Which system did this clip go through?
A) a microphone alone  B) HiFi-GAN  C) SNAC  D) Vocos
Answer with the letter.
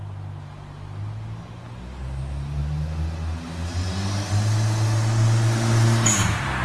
A